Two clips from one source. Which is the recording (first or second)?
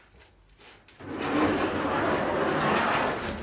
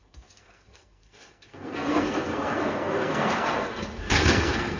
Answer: first